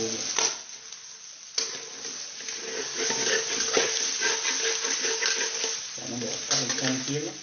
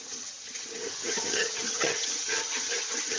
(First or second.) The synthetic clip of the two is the second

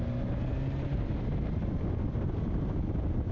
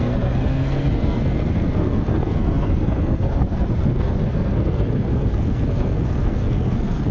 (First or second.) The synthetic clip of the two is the second